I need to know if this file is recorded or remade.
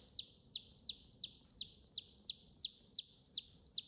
recorded